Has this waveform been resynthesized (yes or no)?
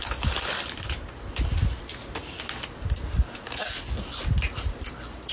no